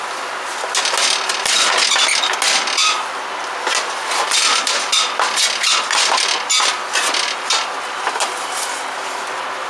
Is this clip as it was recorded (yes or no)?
yes